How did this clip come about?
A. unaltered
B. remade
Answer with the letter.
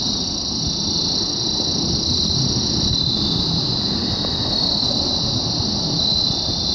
A